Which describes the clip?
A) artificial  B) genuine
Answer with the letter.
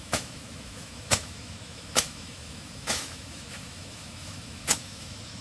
A